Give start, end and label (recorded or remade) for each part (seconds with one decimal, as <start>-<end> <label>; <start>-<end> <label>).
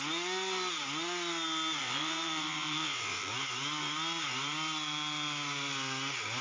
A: 0.0-1.8 recorded; 1.8-3.3 remade; 3.3-6.4 recorded